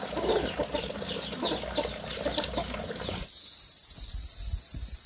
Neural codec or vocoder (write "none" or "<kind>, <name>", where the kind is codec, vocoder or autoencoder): none